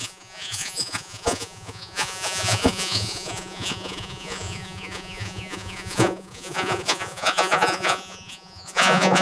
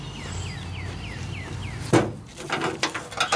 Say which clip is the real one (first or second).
second